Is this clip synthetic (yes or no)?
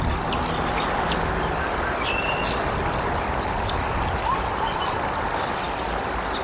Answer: no